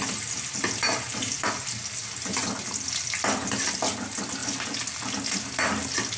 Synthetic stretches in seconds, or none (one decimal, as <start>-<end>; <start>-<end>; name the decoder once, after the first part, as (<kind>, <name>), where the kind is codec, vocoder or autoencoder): none